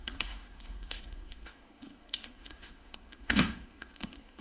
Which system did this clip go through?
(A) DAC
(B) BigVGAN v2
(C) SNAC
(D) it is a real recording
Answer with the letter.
C